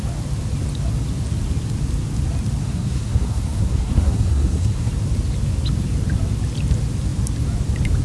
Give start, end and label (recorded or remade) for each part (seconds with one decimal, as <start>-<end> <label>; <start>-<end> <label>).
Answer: 0.0-2.6 recorded; 2.6-4.9 remade; 4.9-8.0 recorded

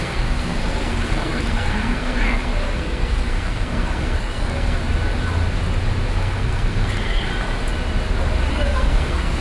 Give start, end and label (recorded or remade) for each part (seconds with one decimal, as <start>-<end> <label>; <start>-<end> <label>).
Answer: 0.0-4.8 remade; 4.8-6.1 recorded; 6.1-7.3 remade; 7.3-8.5 recorded; 8.5-9.4 remade

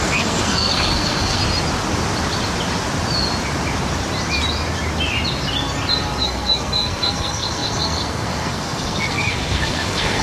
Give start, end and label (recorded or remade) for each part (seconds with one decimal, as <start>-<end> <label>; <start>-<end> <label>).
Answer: 0.0-1.4 remade; 1.4-6.2 recorded; 6.2-10.2 remade

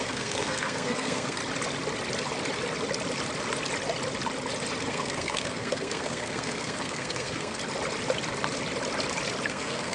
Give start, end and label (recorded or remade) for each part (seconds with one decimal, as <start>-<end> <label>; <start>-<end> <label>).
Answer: 0.0-1.4 remade; 1.4-4.9 recorded; 4.9-7.6 remade; 7.6-9.5 recorded; 9.5-9.9 remade

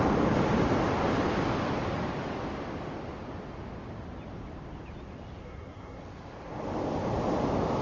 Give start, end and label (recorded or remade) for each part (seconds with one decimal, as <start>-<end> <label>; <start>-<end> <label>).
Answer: 0.0-5.4 recorded; 5.4-6.0 remade; 6.0-7.8 recorded

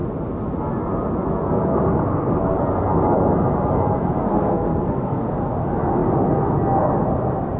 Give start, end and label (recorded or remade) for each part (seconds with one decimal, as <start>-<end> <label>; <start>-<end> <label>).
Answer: 0.0-1.4 recorded; 1.4-2.6 remade; 2.6-4.2 recorded; 4.2-5.3 remade; 5.3-7.6 recorded

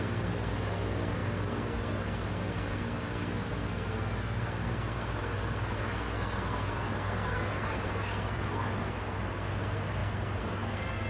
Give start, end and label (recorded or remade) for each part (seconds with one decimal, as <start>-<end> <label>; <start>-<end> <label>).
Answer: 0.0-11.1 remade